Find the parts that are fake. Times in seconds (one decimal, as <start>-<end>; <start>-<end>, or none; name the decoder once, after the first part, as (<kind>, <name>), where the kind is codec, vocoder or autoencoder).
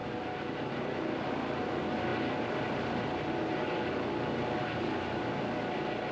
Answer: none